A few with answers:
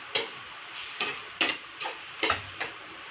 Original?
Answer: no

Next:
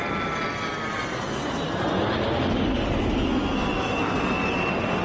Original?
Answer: yes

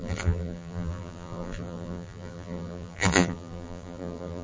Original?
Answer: no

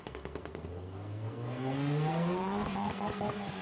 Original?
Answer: no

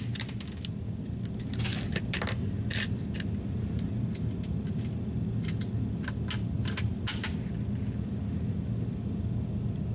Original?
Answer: yes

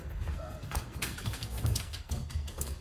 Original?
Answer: no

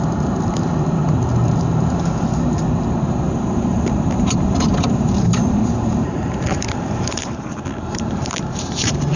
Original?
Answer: no